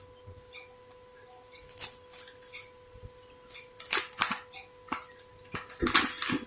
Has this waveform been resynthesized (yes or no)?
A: no